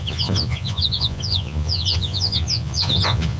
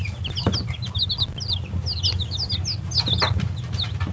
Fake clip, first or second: first